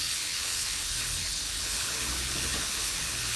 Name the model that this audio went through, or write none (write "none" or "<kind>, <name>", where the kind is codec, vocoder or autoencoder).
codec, HILCodec